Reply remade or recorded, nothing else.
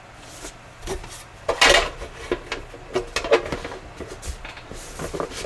recorded